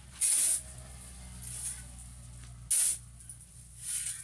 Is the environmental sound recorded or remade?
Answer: recorded